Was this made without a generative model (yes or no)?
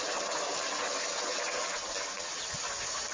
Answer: yes